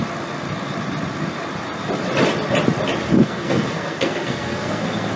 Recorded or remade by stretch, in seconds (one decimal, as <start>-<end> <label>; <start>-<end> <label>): 0.0-3.1 recorded; 3.1-5.2 remade